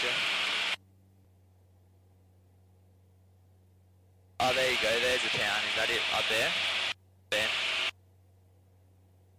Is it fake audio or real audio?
real